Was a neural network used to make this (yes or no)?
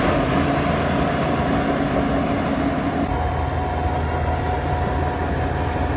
no